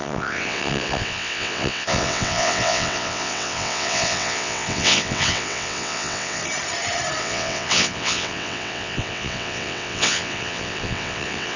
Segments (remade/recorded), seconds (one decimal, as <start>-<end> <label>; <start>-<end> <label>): 0.0-6.4 remade; 6.4-7.2 recorded; 7.2-11.6 remade

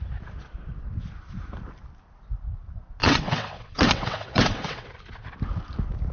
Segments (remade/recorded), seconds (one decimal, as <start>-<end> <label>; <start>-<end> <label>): 0.0-3.0 recorded; 3.0-4.9 remade; 4.9-6.1 recorded

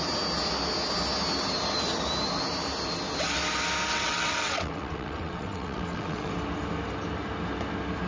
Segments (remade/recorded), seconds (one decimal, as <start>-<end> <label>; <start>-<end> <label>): 0.0-3.9 recorded; 3.9-6.3 remade; 6.3-8.1 recorded

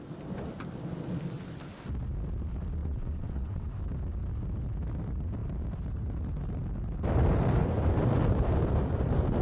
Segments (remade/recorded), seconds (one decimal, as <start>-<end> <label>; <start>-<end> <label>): 0.0-2.8 recorded; 2.8-3.7 remade; 3.7-9.4 recorded

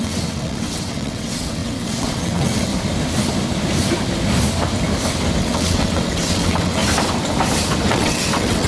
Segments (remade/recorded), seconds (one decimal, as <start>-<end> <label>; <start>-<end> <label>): 0.0-2.7 remade; 2.7-5.4 recorded; 5.4-6.8 remade; 6.8-7.9 recorded; 7.9-8.7 remade